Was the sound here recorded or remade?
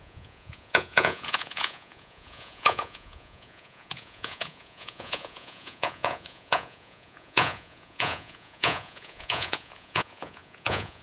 remade